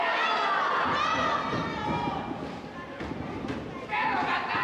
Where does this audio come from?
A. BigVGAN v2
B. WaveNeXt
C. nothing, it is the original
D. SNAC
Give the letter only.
C